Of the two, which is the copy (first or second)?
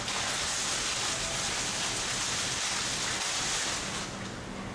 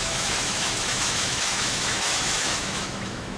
second